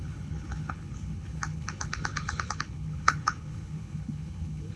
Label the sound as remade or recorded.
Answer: remade